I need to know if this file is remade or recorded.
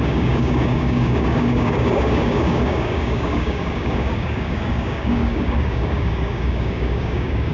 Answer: remade